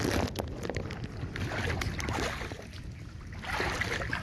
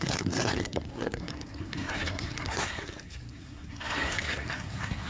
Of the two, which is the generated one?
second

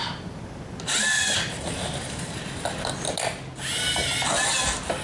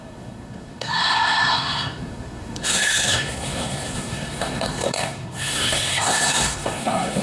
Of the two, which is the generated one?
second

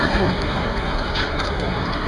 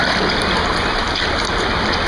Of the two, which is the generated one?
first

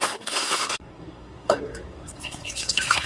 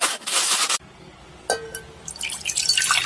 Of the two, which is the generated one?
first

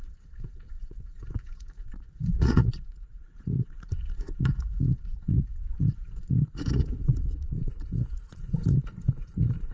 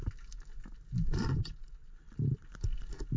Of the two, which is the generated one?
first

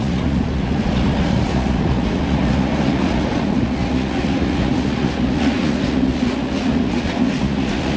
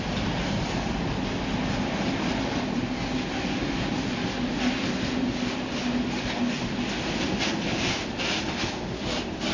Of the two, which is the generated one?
first